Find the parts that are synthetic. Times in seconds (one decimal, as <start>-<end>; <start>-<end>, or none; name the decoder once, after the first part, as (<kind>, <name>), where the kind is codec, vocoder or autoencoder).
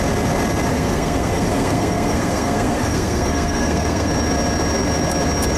0.7-4.1 (codec, SNAC)